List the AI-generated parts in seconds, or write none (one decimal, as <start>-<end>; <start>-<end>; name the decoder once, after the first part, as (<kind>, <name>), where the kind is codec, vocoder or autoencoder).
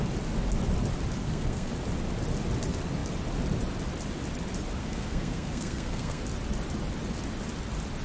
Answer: 1.2-1.7 (codec, SNAC); 4.8-6.2